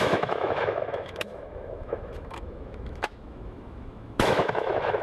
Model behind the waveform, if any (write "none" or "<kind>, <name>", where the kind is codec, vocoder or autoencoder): autoencoder, DAC-VAE